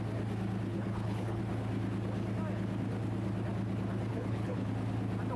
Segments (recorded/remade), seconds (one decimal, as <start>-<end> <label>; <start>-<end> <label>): 0.0-0.7 recorded; 0.7-1.4 remade; 1.4-4.1 recorded; 4.1-4.7 remade; 4.7-5.4 recorded